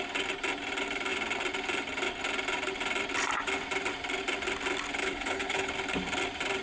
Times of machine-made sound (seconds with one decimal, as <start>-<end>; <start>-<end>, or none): 5.0-5.7